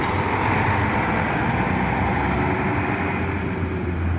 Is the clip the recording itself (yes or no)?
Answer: yes